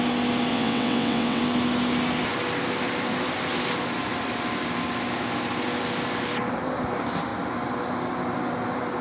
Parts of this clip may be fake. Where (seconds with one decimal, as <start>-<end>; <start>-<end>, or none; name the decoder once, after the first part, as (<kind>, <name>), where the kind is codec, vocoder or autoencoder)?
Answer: 0.5-1.4 (vocoder, WaveNeXt)